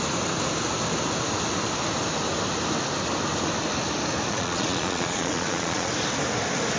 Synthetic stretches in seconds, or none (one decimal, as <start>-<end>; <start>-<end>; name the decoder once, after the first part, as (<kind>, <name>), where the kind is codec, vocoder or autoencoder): 4.3-5.9 (vocoder, Vocos)